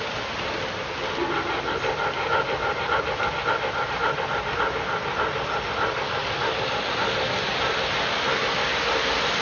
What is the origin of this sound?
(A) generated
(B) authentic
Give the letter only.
B